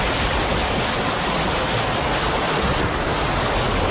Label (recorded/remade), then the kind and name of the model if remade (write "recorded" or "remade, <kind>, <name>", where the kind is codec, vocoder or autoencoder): recorded